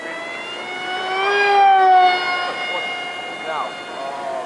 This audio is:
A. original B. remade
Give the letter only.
A